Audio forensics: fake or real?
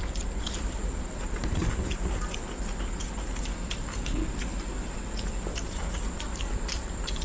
real